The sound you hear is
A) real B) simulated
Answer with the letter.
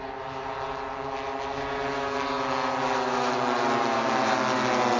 A